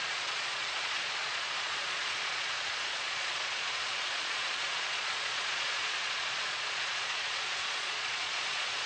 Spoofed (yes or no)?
yes